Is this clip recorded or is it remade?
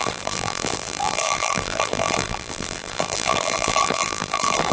remade